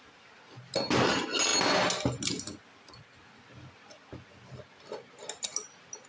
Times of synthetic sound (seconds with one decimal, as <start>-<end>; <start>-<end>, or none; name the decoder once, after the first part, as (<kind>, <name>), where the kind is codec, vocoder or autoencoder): none